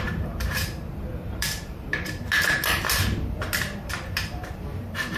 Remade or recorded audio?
remade